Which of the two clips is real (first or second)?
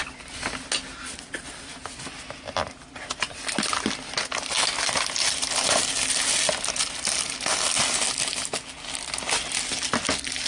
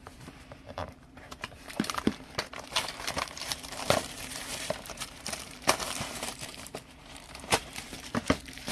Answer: first